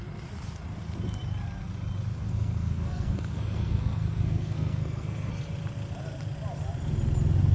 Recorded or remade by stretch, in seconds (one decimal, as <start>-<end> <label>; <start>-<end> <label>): 0.0-2.1 recorded; 2.1-5.3 remade; 5.3-7.5 recorded